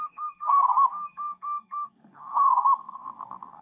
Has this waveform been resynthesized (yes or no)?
yes